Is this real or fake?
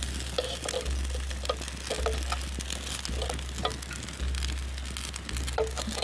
real